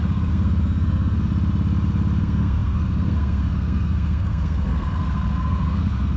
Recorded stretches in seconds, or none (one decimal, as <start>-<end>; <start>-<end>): 1.3-2.2